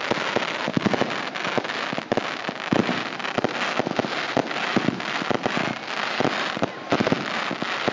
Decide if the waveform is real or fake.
real